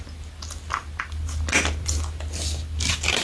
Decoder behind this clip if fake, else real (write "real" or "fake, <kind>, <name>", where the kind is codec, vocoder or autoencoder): real